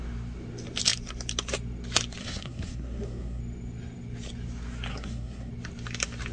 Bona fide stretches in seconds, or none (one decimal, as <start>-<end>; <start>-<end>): 0.0-2.2; 3.4-4.9; 5.5-6.3